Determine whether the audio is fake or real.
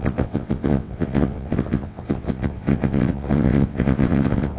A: fake